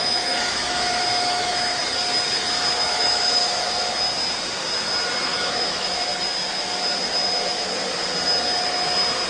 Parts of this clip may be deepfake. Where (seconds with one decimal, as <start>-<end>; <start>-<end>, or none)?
0.0-1.8; 2.7-3.4; 5.2-6.1